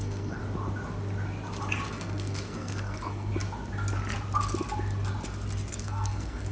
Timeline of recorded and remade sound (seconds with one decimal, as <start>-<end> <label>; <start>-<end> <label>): 0.0-0.4 remade; 0.4-1.9 recorded; 1.9-3.3 remade; 3.3-5.7 recorded; 5.7-6.5 remade